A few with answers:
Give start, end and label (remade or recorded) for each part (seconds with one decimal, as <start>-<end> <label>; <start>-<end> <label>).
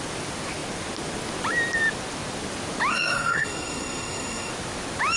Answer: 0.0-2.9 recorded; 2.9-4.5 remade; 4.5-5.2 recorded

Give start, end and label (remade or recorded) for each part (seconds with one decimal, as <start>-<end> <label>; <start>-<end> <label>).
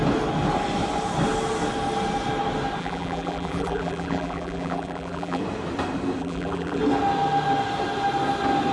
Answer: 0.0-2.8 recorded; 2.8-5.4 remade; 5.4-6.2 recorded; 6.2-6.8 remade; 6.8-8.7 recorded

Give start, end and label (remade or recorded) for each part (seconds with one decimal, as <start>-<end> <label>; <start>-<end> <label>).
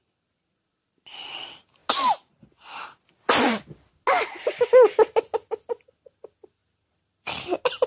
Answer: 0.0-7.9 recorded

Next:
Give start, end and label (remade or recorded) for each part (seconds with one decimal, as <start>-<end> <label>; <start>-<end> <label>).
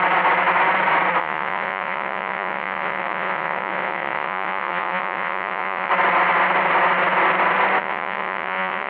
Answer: 0.0-1.2 recorded; 1.2-5.9 remade; 5.9-7.8 recorded; 7.8-8.9 remade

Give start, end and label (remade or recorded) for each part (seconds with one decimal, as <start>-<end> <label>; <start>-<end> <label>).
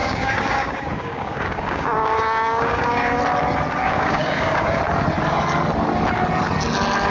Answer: 0.0-3.2 remade; 3.2-3.8 recorded; 3.8-4.8 remade; 4.8-7.1 recorded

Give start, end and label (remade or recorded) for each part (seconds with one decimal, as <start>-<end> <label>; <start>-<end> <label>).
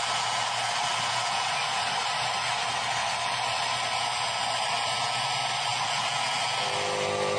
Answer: 0.0-7.4 recorded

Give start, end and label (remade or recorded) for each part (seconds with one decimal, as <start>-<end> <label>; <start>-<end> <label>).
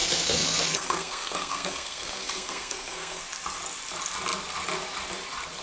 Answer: 0.0-3.2 remade; 3.2-5.6 recorded